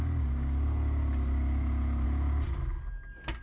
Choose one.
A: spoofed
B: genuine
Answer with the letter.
B